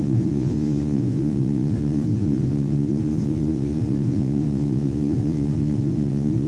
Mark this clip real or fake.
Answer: fake